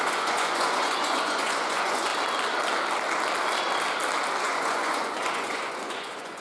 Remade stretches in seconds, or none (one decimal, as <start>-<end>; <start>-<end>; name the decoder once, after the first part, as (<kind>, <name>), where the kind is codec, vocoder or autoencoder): 0.0-2.1 (vocoder, Vocos); 4.4-6.4

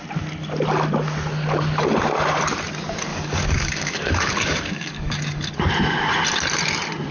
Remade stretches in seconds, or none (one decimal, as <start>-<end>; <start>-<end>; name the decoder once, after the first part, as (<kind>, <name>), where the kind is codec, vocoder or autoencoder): 3.1-5.5 (codec, DAC)